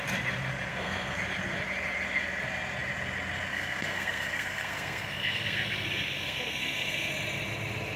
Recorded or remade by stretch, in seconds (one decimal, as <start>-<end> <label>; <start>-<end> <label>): 0.0-0.7 recorded; 0.7-1.2 remade; 1.2-3.5 recorded; 3.5-7.1 remade; 7.1-8.0 recorded